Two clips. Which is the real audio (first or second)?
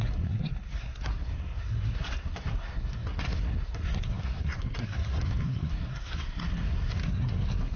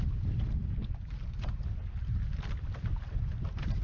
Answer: second